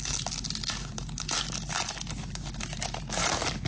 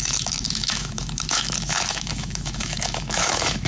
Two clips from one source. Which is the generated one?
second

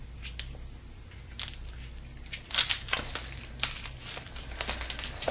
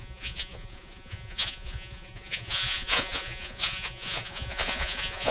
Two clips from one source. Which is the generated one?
second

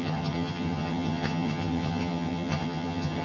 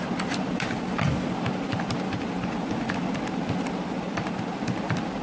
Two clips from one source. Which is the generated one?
first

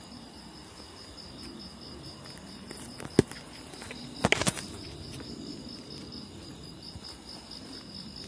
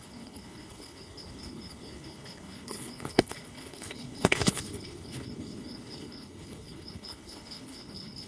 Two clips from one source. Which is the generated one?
second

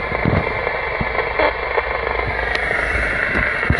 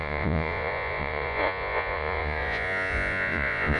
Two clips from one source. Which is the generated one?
second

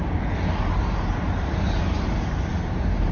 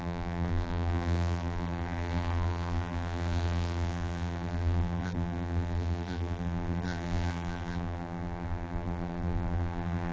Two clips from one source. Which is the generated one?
second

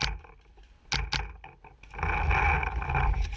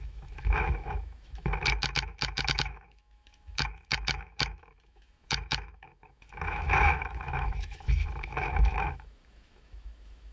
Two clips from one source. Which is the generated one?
second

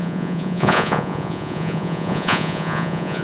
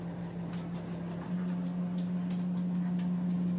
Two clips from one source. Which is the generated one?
first